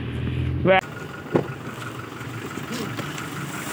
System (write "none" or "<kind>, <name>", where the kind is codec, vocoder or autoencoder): none